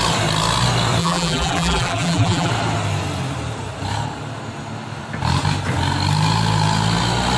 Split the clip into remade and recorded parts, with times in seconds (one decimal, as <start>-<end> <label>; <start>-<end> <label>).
0.0-1.0 recorded; 1.0-2.5 remade; 2.5-7.4 recorded